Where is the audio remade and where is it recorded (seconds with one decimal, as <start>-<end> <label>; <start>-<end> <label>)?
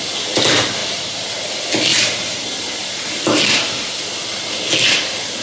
0.0-0.8 recorded; 0.8-1.5 remade; 1.5-1.9 recorded; 1.9-4.0 remade; 4.0-5.4 recorded